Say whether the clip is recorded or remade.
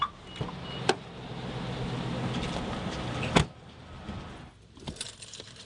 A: recorded